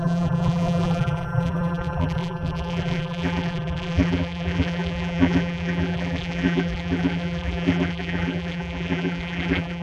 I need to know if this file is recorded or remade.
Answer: remade